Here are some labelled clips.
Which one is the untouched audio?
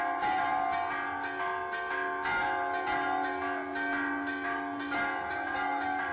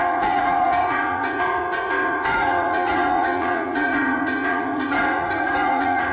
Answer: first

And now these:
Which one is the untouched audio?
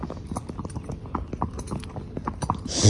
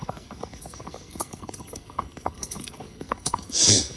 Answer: first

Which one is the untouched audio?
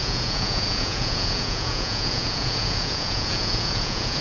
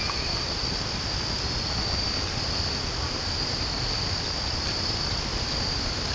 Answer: second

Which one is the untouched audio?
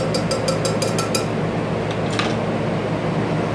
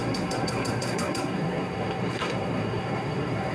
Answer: first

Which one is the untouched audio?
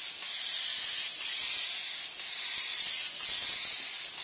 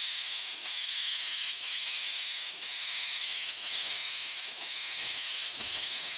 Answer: first